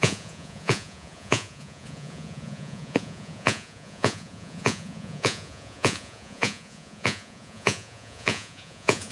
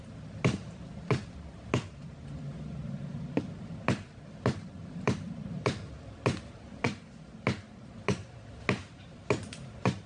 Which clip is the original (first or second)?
second